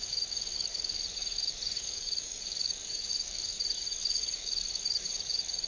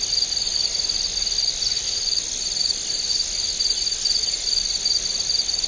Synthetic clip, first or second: first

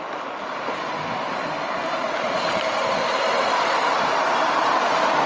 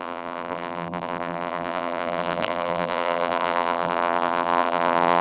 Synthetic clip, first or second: second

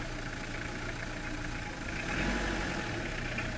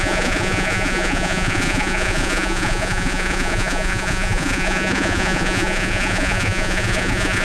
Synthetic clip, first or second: second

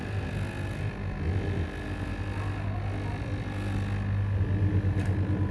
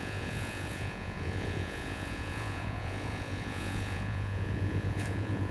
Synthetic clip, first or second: second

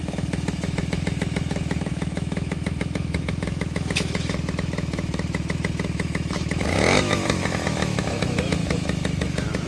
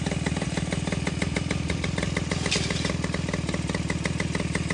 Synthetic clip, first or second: first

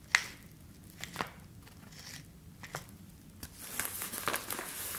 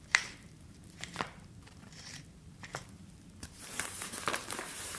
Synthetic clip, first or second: second